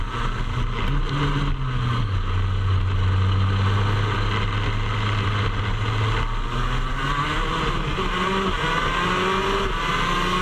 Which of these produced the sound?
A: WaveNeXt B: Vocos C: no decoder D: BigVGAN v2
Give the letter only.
C